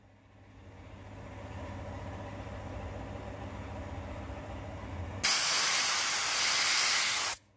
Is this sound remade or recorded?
recorded